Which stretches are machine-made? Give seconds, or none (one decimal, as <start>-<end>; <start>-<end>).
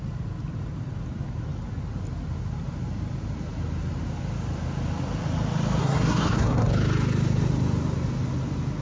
5.8-6.7